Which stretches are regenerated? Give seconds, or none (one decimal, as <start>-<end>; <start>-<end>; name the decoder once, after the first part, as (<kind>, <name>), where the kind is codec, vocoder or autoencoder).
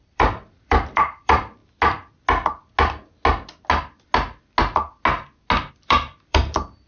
0.0-1.6 (vocoder, BigVGAN v2); 5.7-6.9